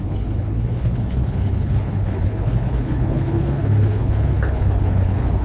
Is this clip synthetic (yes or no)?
yes